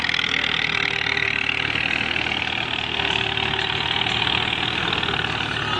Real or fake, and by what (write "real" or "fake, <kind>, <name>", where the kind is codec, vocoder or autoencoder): real